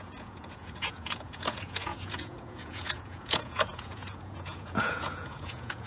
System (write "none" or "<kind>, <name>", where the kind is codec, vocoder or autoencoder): vocoder, Vocos